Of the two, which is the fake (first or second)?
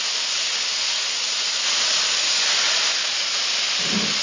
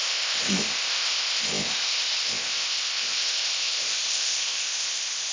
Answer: second